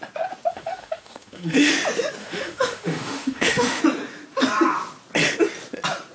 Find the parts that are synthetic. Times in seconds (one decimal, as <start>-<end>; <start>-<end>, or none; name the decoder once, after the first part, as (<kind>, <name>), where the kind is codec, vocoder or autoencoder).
0.5-1.7 (autoencoder, DAC-VAE); 2.2-3.8